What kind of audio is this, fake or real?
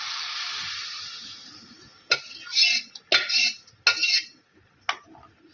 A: real